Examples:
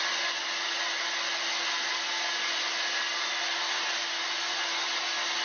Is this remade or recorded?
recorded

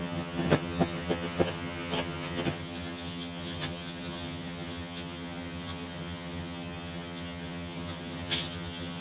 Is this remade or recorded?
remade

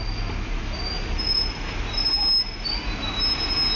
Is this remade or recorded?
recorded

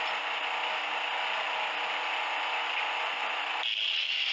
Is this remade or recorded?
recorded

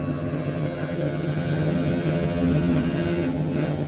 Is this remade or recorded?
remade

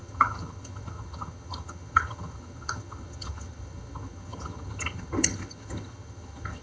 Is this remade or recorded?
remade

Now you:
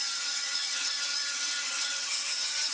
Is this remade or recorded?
remade